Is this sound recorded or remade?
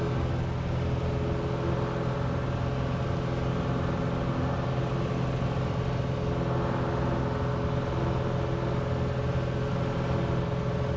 recorded